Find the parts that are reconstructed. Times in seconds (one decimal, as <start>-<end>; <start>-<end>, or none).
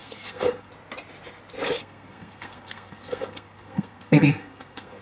0.0-0.7; 1.8-5.0